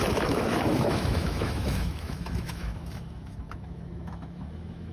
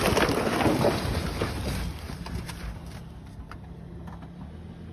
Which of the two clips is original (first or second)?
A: second